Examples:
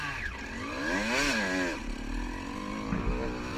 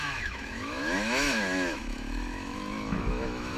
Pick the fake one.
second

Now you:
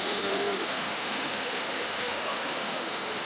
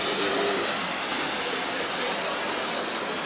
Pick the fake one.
first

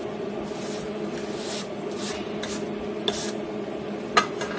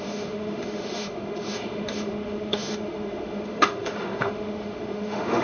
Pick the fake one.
second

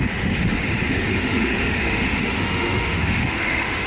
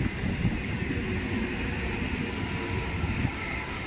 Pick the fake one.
first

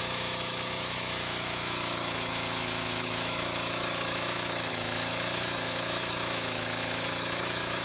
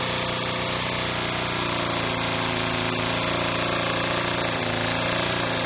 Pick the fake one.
first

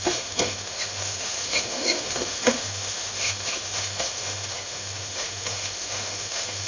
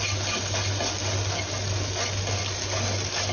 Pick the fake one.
first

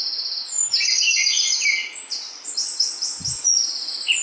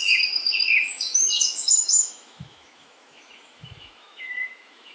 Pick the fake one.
second